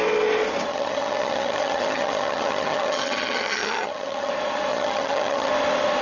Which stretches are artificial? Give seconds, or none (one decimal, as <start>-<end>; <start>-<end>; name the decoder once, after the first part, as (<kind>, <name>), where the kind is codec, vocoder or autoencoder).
0.7-4.3 (vocoder, HiFi-GAN); 4.7-5.5